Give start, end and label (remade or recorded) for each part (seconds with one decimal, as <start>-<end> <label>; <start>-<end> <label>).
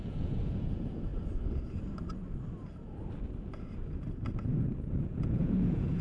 0.0-1.1 remade; 1.1-4.7 recorded; 4.7-6.0 remade